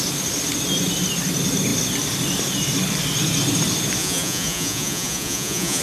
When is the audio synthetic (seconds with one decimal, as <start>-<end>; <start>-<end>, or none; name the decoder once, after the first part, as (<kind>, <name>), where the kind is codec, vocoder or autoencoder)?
4.0-5.8 (vocoder, Vocos)